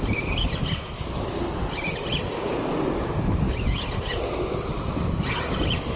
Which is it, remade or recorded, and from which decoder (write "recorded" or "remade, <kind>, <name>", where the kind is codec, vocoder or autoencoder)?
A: recorded